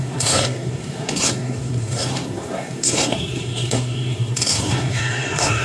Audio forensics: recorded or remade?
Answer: remade